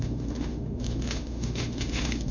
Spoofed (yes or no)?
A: yes